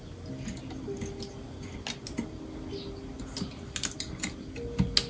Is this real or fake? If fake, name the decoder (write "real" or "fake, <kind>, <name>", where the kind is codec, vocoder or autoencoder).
real